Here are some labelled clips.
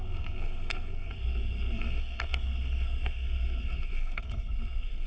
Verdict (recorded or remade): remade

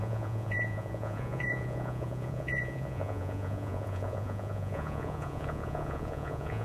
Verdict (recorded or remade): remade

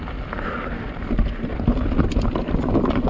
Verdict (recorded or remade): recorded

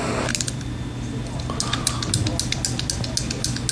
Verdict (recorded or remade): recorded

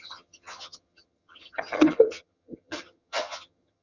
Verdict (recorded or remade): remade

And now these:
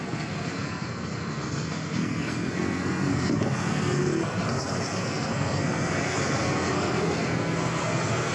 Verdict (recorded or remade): remade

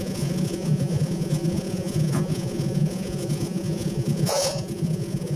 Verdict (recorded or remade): remade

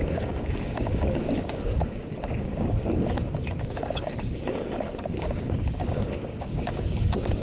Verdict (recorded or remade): remade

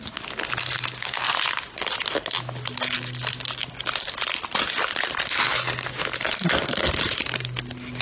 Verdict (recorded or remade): recorded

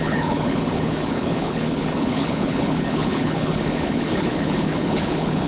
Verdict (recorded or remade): remade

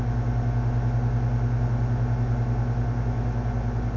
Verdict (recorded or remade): recorded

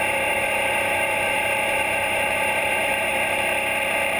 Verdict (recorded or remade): remade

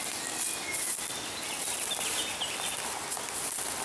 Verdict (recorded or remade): recorded